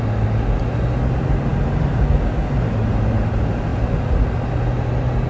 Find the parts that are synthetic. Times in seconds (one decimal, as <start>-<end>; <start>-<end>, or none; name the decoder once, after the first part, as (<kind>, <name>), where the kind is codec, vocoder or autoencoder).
none